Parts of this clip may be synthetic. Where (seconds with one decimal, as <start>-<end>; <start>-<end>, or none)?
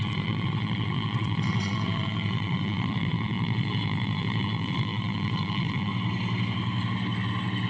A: 0.0-5.9